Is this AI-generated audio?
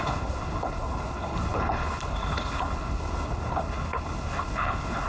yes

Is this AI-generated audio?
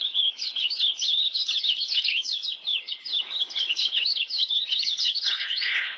yes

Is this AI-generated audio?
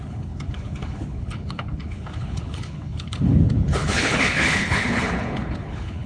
yes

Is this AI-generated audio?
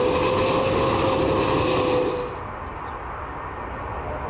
no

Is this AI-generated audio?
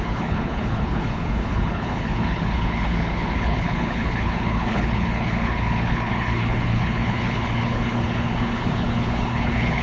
yes